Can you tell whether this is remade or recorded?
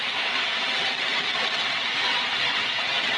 remade